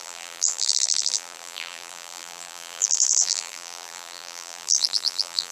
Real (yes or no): no